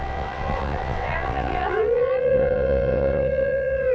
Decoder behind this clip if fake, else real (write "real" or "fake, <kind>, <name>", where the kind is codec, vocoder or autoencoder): fake, vocoder, WaveNeXt